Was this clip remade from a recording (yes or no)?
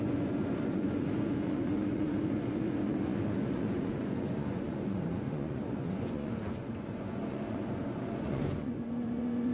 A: yes